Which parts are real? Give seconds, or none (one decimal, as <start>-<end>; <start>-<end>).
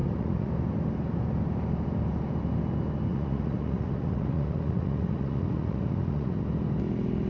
0.5-3.1; 6.4-7.3